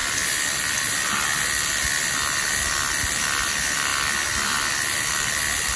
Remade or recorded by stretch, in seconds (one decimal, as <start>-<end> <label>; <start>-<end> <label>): 0.0-3.5 recorded; 3.5-3.9 remade; 3.9-5.1 recorded; 5.1-5.8 remade